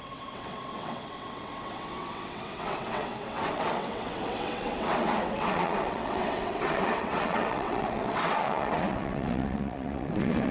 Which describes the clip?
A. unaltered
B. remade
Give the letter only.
B